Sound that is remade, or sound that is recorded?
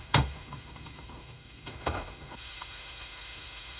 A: remade